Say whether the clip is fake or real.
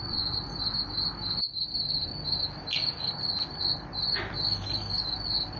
real